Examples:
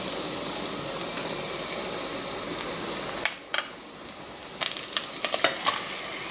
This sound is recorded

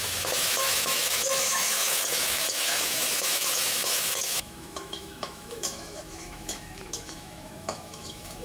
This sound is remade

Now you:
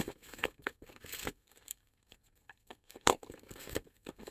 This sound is remade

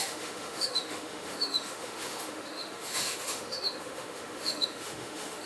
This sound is remade